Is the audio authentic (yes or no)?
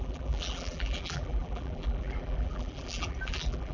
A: no